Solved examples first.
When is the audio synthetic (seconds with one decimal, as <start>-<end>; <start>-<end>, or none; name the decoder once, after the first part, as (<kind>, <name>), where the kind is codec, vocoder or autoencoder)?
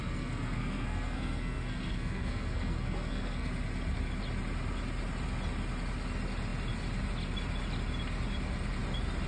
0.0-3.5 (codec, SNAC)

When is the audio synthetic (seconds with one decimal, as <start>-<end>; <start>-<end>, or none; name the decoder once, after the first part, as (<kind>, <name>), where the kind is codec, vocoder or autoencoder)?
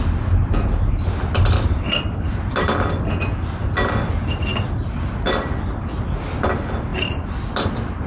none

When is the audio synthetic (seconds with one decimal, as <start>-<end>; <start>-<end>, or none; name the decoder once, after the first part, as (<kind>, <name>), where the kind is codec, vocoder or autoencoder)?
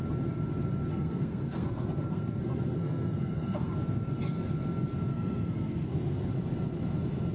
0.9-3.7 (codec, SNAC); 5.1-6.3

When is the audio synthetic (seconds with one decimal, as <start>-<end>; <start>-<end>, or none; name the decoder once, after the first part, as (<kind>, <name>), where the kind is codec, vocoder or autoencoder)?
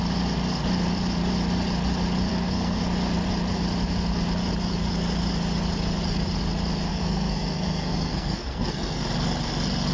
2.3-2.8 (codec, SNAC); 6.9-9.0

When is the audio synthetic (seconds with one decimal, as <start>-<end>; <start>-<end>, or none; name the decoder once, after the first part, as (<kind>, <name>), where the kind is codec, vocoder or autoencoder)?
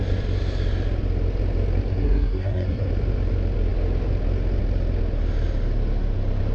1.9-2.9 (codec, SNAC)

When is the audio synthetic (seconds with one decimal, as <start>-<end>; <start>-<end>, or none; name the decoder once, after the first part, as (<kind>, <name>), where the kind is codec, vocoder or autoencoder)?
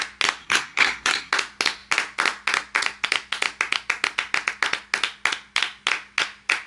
0.4-1.3 (codec, SNAC)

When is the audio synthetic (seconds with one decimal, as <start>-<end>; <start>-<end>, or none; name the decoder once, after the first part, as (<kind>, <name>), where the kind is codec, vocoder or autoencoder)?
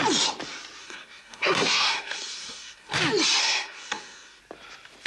0.8-3.0 (codec, SNAC); 3.4-4.4